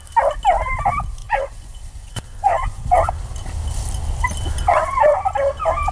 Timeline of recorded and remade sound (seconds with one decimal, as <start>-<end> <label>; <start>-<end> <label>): 0.0-1.2 recorded; 1.2-3.1 remade; 3.1-4.7 recorded; 4.7-5.2 remade; 5.2-5.9 recorded